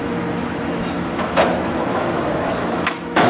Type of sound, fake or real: fake